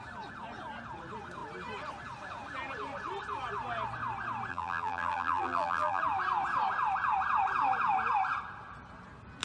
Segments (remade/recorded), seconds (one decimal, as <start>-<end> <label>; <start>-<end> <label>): 0.0-4.5 recorded; 4.5-6.0 remade; 6.0-9.4 recorded

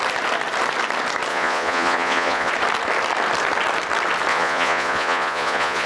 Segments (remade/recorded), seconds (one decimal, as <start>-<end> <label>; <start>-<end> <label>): 0.0-1.3 recorded; 1.3-2.5 remade; 2.5-4.3 recorded; 4.3-5.9 remade

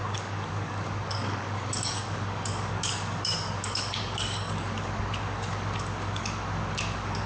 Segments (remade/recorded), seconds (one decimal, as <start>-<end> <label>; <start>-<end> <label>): 0.0-7.3 remade

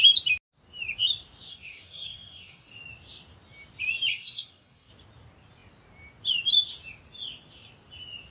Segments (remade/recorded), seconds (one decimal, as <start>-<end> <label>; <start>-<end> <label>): 0.0-1.5 recorded; 1.5-2.7 remade; 2.7-4.1 recorded; 4.1-4.9 remade; 4.9-8.3 recorded

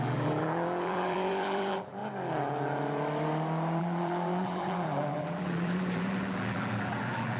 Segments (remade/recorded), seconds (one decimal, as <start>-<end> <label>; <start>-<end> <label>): 0.0-2.0 remade; 2.0-3.8 recorded; 3.8-7.4 remade

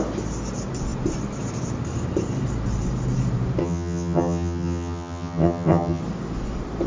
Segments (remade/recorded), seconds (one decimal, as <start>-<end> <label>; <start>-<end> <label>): 0.0-3.6 recorded; 3.6-6.0 remade; 6.0-6.9 recorded